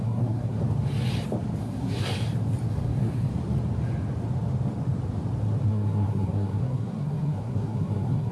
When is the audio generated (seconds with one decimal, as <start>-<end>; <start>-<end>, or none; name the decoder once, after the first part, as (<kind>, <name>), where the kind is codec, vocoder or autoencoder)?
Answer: 0.0-0.6 (codec, SNAC); 1.6-2.1; 2.7-3.3; 5.7-8.3